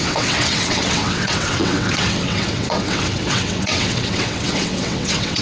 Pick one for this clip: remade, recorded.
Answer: remade